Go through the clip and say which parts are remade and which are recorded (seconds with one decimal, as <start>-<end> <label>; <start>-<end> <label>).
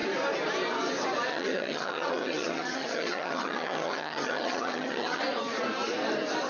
0.0-1.3 recorded; 1.3-5.2 remade; 5.2-6.5 recorded